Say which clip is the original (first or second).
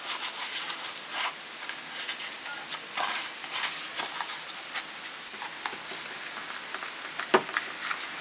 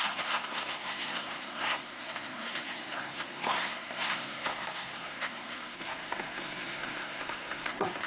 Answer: first